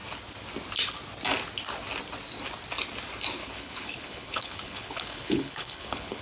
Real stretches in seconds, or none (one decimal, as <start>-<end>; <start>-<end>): 0.0-3.4